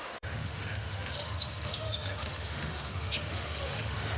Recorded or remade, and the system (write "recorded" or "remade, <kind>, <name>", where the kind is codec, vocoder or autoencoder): remade, autoencoder, DAC-VAE